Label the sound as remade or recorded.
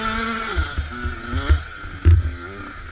recorded